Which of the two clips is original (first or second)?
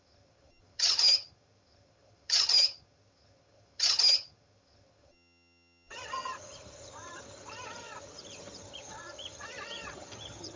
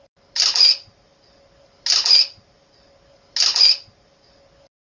second